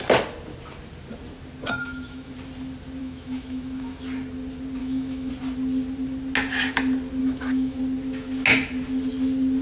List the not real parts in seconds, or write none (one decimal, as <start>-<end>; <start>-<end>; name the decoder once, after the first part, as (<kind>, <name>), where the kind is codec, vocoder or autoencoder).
1.8-2.3 (autoencoder, DAC-VAE); 3.0-4.0; 4.8-5.3; 7.2-7.8